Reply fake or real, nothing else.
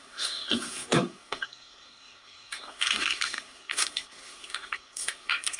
fake